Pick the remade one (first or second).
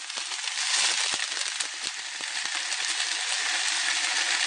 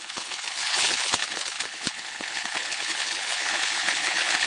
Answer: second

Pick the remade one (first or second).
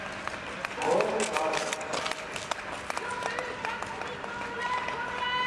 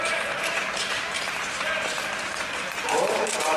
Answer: second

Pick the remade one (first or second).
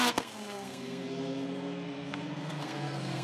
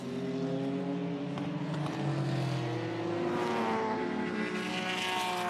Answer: first